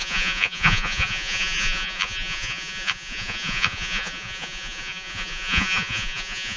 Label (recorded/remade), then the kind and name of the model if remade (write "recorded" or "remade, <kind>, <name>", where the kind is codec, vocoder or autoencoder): remade, vocoder, Vocos